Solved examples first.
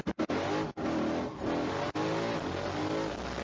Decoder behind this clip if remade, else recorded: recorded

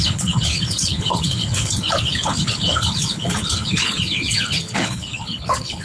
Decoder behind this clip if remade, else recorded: remade, codec, HILCodec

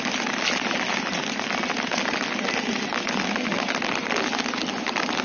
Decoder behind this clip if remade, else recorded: recorded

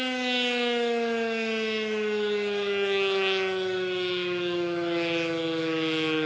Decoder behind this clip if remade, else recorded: remade, autoencoder, DAC-VAE